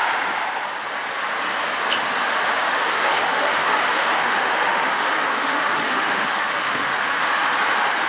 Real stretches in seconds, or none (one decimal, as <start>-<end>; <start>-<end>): 0.0-2.6; 7.5-8.1